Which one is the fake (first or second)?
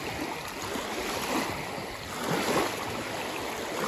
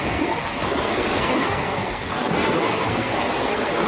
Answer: second